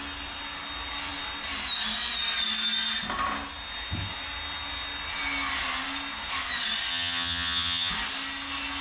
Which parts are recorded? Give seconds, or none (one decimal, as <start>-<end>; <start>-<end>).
0.0-6.9; 7.9-8.8